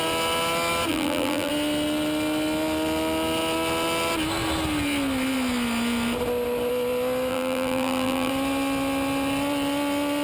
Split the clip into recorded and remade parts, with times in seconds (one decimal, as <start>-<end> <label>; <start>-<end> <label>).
0.0-0.9 recorded; 0.9-1.5 remade; 1.5-7.3 recorded; 7.3-8.3 remade; 8.3-10.2 recorded